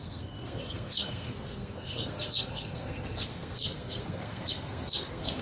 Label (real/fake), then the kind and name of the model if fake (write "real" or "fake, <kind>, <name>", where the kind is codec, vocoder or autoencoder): fake, codec, SNAC